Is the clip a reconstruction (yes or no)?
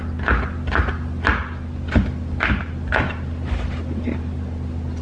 no